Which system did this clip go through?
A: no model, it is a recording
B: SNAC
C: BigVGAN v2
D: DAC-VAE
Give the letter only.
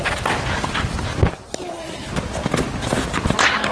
A